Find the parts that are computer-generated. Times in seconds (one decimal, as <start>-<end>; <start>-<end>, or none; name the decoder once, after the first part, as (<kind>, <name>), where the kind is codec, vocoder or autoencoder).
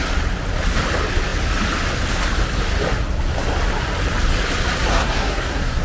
4.9-5.8 (codec, SNAC)